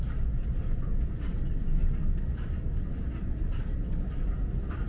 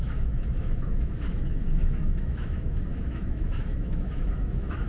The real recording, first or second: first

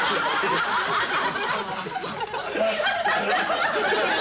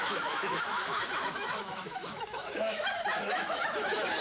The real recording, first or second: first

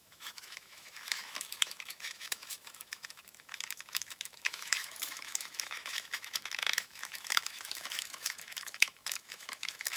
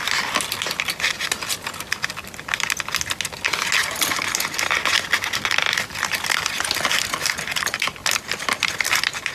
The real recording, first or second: second